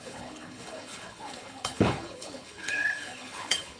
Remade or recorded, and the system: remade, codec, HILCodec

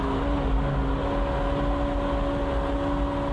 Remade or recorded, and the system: recorded